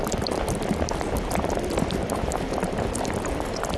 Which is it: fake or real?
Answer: real